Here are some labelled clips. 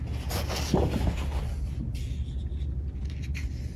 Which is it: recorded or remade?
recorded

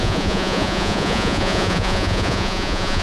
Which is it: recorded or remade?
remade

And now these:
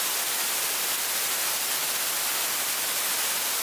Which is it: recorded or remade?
recorded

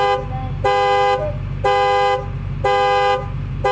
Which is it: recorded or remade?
recorded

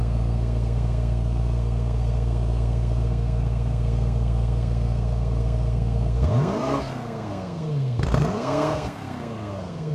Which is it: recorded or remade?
remade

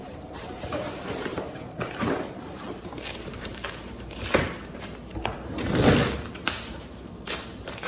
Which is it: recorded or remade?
remade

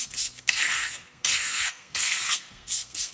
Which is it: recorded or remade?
remade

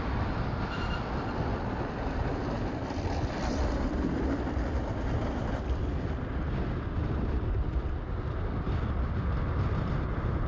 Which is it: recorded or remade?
recorded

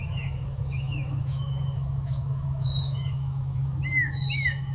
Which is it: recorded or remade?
remade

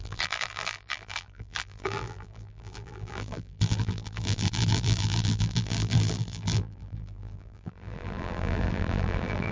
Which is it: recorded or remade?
remade